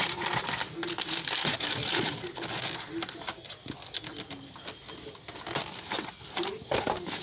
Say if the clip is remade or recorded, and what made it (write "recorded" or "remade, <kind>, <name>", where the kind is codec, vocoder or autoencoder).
recorded